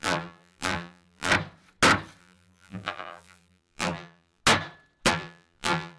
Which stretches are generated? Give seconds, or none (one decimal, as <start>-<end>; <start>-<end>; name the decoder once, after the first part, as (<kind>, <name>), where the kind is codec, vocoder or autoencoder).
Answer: 0.0-1.3 (vocoder, BigVGAN v2); 2.2-4.4; 5.1-6.0